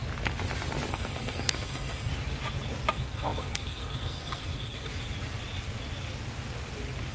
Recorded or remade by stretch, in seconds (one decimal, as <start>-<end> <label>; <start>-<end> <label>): 0.0-0.9 recorded; 0.9-2.1 remade; 2.1-2.9 recorded; 2.9-4.9 remade; 4.9-7.1 recorded